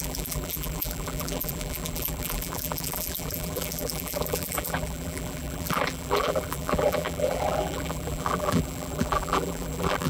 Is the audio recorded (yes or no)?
no